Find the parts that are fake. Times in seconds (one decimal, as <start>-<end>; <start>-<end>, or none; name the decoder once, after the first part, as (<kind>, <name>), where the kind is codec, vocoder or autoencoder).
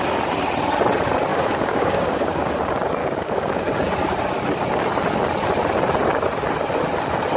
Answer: 1.3-2.5 (codec, DAC); 3.0-3.7